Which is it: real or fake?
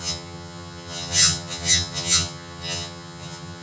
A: fake